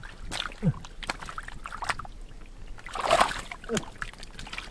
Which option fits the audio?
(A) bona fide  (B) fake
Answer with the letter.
A